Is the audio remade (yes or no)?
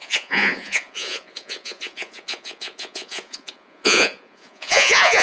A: yes